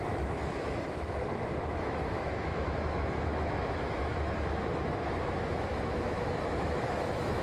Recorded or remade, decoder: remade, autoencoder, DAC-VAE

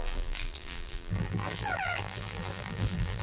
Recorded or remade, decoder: remade, vocoder, BigVGAN v2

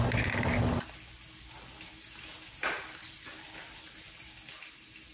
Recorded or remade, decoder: recorded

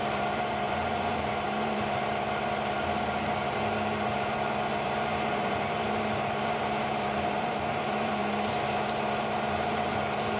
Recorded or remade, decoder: remade, vocoder, BigVGAN v2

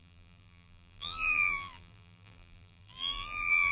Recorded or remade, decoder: remade, vocoder, BigVGAN v2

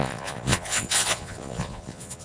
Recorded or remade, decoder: remade, vocoder, Vocos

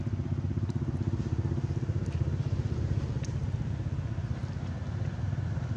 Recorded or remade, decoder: recorded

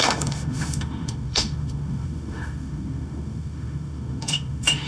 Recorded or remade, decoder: remade, autoencoder, DAC-VAE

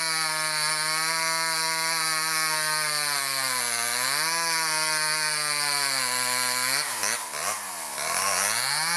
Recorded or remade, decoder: recorded